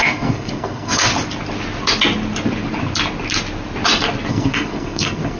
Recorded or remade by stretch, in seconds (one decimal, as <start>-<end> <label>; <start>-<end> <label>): 0.0-1.1 remade; 1.1-4.3 recorded; 4.3-5.4 remade